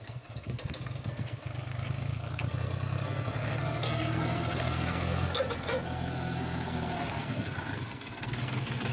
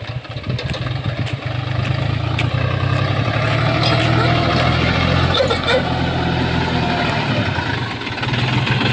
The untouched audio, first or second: second